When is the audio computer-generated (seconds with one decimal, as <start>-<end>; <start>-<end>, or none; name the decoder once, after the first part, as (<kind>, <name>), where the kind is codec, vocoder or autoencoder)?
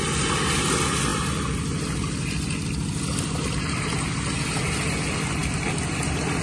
none